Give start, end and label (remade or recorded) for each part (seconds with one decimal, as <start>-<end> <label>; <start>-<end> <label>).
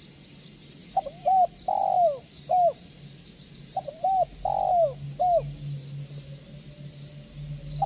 0.0-7.9 recorded